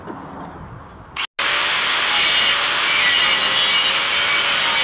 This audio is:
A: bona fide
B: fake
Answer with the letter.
A